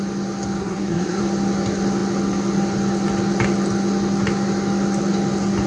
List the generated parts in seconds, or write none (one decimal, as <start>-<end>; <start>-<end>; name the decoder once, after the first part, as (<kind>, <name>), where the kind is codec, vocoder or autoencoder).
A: 0.6-1.2 (codec, SNAC)